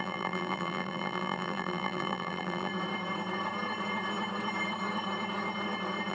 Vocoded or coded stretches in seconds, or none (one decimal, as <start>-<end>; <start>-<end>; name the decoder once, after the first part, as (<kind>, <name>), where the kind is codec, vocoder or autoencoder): 0.0-2.7 (vocoder, BigVGAN v2)